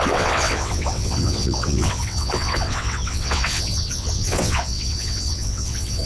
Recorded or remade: remade